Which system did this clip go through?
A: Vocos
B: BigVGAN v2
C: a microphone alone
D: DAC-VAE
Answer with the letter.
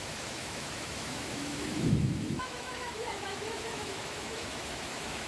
D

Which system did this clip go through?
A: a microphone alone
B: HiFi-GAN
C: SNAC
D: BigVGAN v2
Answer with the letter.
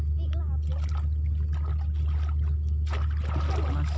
A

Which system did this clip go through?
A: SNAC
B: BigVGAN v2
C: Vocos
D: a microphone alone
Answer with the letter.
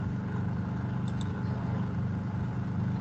D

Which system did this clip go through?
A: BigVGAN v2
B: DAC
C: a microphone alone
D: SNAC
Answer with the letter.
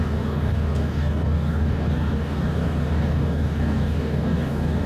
B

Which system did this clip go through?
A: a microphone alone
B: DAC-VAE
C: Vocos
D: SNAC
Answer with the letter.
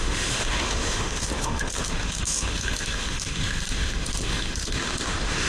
B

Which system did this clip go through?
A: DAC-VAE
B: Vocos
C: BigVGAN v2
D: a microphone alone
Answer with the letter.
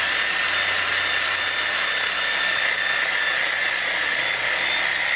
D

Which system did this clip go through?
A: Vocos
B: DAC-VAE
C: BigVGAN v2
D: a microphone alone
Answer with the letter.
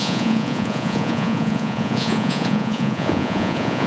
A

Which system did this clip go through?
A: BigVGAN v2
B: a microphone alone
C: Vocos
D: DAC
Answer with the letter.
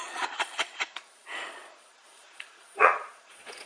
C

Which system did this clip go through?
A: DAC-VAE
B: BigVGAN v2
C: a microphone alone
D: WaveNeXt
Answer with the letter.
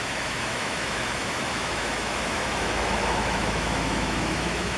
A